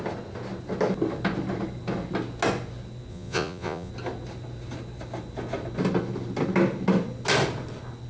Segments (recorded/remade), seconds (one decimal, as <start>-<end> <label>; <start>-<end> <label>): 0.0-3.1 recorded; 3.1-3.9 remade; 3.9-8.1 recorded